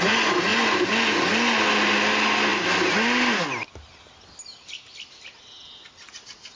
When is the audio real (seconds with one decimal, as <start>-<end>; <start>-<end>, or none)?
0.0-6.6